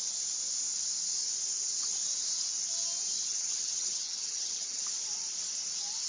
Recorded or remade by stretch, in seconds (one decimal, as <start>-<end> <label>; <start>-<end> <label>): 0.0-3.3 recorded; 3.3-4.8 remade; 4.8-6.1 recorded